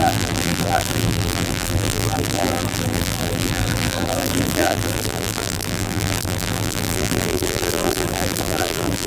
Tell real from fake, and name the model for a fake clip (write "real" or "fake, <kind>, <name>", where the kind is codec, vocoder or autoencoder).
fake, vocoder, BigVGAN v2